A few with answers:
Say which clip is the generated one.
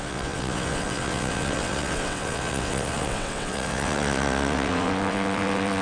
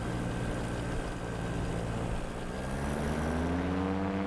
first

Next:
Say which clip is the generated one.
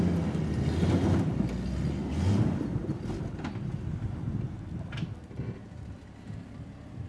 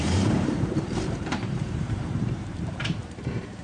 second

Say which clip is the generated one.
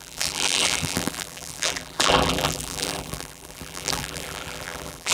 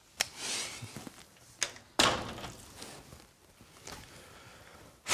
first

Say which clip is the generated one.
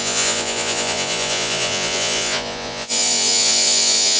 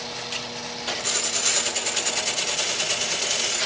first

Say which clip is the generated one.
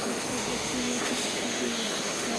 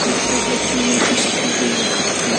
first